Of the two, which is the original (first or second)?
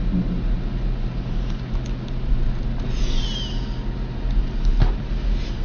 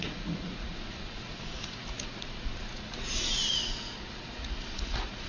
first